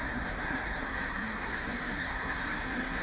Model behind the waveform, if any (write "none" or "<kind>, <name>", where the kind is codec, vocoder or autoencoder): codec, SNAC